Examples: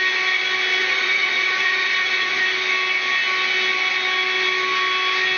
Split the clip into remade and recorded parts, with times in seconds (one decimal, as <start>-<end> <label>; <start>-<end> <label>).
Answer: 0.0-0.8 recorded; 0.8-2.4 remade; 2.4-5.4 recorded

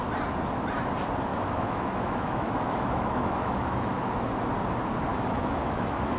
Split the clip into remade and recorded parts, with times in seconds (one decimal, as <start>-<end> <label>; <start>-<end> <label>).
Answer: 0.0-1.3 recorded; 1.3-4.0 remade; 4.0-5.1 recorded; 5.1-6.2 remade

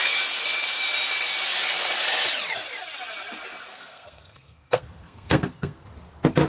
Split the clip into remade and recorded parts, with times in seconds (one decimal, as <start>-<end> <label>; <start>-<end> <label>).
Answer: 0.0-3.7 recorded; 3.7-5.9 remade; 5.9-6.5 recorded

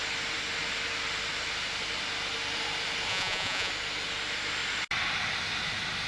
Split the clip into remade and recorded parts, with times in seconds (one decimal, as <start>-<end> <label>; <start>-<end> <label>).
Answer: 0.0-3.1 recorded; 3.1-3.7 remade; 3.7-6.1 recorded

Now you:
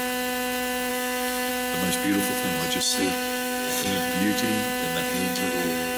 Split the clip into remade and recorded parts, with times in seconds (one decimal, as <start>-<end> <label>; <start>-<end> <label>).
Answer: 0.0-0.9 recorded; 0.9-1.5 remade; 1.5-3.0 recorded; 3.0-4.1 remade; 4.1-5.1 recorded; 5.1-6.0 remade

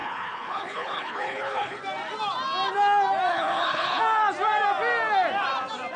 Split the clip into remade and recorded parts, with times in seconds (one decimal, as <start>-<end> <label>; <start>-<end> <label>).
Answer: 0.0-1.8 remade; 1.8-3.3 recorded; 3.3-4.0 remade; 4.0-6.0 recorded